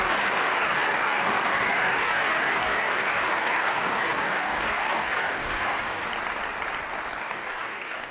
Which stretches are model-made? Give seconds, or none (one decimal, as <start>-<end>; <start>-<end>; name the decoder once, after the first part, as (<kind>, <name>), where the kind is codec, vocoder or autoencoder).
0.0-6.0 (codec, DAC); 7.2-8.1